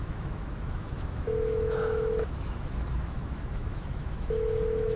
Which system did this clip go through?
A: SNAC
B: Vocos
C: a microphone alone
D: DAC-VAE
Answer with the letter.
D